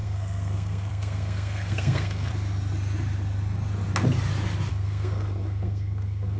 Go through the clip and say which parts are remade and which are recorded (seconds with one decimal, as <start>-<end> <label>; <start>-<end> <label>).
0.0-2.3 remade; 2.3-4.7 recorded; 4.7-6.4 remade